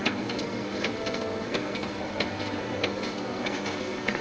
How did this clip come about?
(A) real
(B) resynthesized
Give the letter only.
B